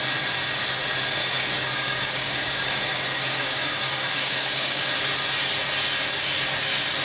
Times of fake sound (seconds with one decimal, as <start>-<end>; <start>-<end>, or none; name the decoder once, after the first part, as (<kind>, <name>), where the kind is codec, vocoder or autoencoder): 1.2-5.0 (codec, DAC)

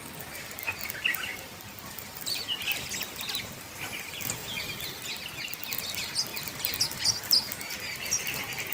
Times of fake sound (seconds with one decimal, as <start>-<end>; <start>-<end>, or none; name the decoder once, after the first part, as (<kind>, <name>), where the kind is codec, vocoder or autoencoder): 1.3-2.6 (vocoder, BigVGAN v2); 4.4-5.0

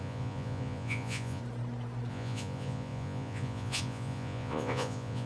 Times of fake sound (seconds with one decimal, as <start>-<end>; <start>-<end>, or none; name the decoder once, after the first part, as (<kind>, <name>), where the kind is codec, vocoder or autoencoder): 0.0-1.4 (vocoder, Vocos); 2.1-5.3

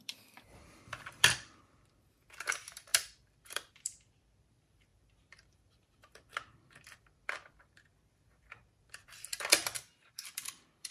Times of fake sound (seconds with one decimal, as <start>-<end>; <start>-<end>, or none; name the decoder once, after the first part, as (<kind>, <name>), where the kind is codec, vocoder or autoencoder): 0.0-10.9 (vocoder, BigVGAN v2)

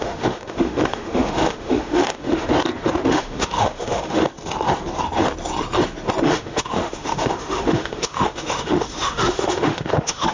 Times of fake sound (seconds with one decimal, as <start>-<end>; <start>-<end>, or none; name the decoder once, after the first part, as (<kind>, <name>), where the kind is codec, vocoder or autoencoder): 0.0-2.5 (autoencoder, DAC-VAE); 3.1-4.2; 6.2-10.3

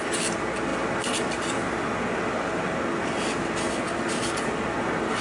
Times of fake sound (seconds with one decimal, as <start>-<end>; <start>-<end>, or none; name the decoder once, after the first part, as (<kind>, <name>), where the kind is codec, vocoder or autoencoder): none

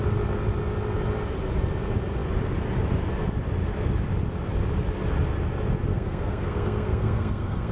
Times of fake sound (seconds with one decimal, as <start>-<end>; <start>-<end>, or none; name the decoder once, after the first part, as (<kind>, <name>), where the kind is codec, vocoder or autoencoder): 5.9-7.7 (codec, SNAC)

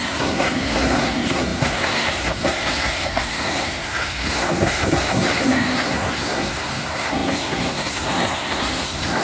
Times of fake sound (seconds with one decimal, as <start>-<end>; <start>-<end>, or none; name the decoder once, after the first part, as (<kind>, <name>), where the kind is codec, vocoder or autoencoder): 0.0-9.2 (codec, SNAC)